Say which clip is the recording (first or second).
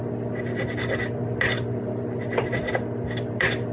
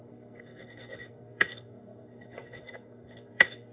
first